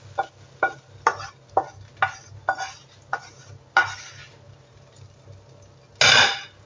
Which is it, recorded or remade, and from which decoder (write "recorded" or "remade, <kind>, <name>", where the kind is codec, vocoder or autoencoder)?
recorded